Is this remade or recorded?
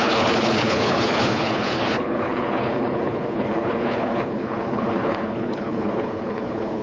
remade